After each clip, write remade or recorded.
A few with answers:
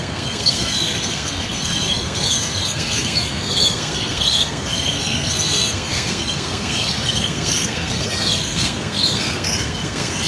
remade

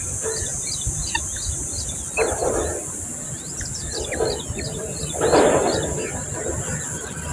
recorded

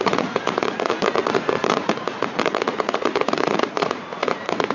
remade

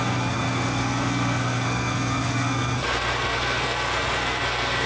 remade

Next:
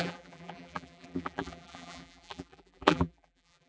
remade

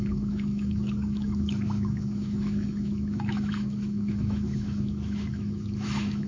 remade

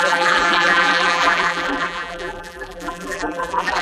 remade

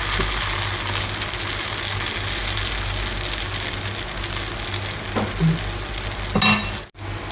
recorded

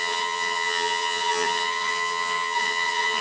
remade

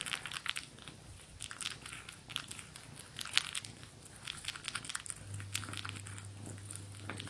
recorded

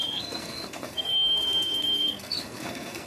remade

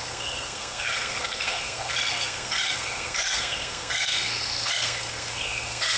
remade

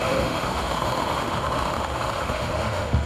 remade